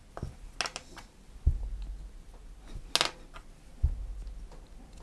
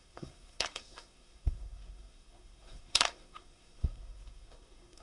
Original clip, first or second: first